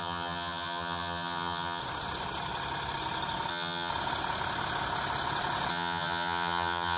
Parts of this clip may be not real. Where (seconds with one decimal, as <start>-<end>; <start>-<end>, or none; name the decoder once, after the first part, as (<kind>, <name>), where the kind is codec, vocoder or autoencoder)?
0.0-1.8 (vocoder, HiFi-GAN); 3.5-3.9; 5.7-7.0